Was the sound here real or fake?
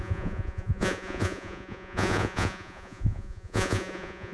fake